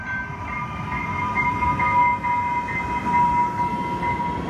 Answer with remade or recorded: recorded